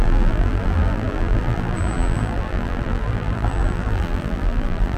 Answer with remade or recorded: remade